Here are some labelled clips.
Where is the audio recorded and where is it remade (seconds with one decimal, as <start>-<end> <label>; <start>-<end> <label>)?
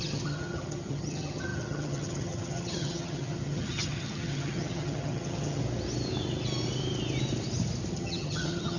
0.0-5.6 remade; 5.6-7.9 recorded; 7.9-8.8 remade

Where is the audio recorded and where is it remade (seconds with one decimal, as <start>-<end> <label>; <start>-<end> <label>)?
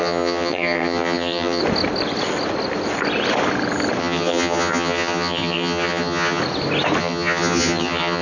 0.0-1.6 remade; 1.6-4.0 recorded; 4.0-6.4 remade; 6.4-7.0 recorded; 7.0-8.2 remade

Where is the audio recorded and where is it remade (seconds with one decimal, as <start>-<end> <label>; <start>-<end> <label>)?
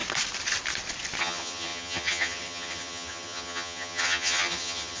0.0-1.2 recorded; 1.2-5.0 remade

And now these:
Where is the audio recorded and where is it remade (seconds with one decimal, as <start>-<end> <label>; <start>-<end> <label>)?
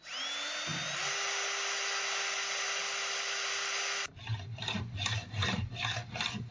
0.0-6.5 recorded